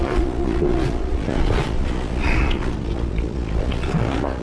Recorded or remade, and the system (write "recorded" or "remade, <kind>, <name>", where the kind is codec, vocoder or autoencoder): remade, vocoder, Vocos